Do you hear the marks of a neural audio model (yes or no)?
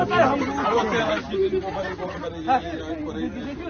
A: no